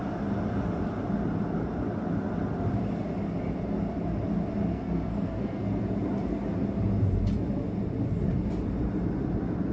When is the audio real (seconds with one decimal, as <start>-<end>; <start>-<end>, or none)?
0.0-4.7; 5.8-9.7